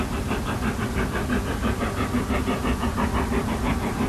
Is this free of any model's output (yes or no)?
yes